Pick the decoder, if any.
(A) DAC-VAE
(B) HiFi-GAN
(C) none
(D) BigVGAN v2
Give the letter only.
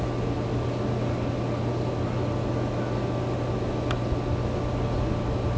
C